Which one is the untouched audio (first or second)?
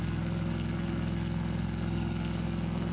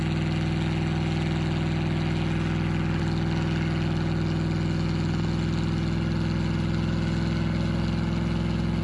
second